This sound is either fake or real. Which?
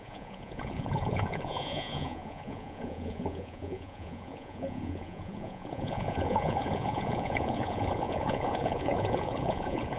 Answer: fake